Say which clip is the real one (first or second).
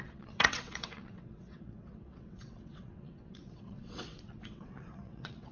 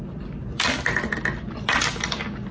second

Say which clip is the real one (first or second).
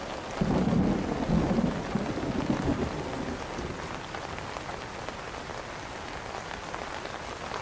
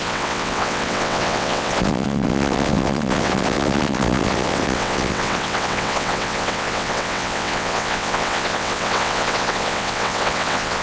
first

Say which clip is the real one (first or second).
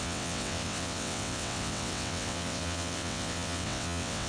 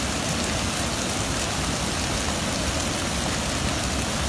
second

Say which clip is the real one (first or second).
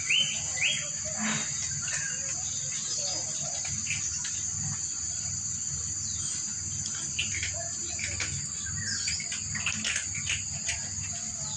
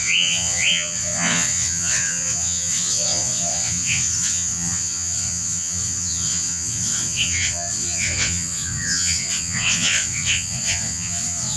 first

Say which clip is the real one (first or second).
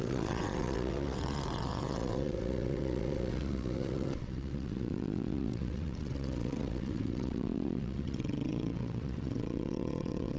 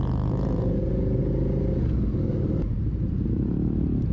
second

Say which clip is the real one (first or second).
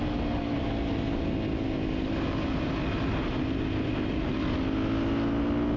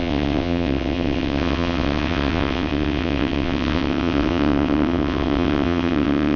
first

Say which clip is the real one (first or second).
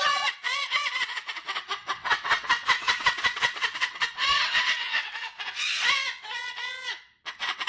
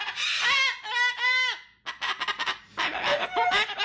second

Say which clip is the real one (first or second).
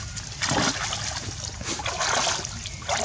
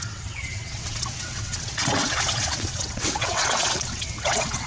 first